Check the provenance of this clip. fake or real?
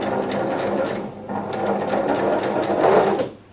real